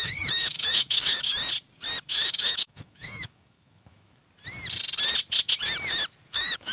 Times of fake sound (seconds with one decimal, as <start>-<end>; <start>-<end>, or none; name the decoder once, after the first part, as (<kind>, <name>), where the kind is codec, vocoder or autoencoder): 0.0-1.4 (autoencoder, DAC-VAE); 2.1-4.2; 6.3-6.7